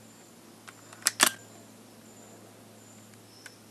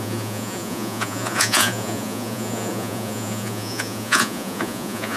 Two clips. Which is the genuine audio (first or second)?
first